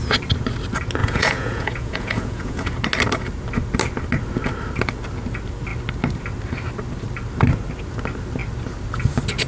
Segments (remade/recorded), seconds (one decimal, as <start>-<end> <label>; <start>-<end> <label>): 0.0-1.0 recorded; 1.0-2.7 remade; 2.7-9.5 recorded